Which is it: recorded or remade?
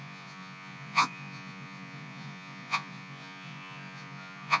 remade